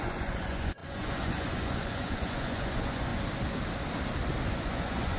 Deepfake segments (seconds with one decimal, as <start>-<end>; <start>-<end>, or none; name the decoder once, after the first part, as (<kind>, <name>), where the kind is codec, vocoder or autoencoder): 0.0-3.1 (vocoder, Vocos); 4.5-5.2